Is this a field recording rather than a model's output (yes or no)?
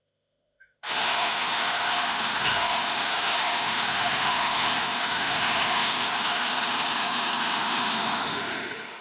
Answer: no